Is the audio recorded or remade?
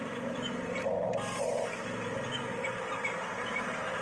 remade